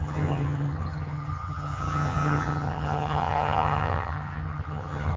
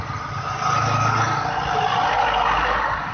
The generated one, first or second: first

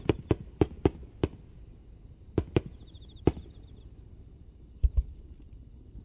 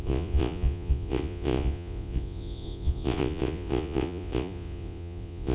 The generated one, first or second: second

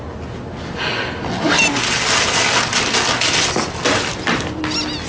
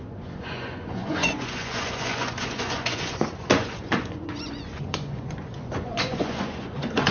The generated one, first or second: second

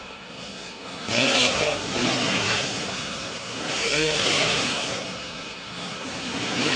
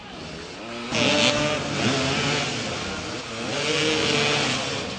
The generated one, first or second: first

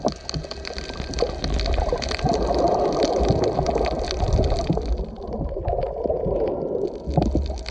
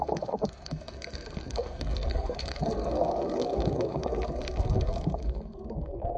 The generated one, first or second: second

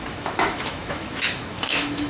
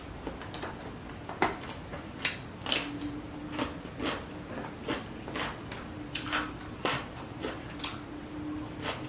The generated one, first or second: first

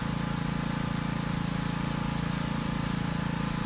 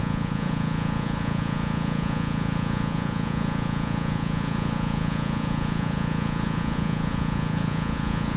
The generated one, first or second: second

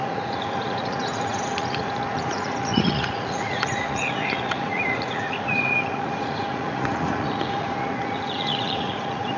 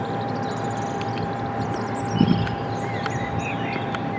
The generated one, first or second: first